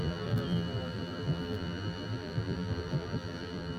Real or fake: fake